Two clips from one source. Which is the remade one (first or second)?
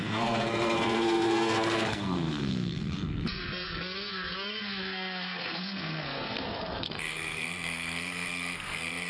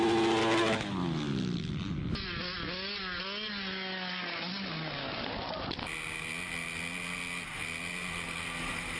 first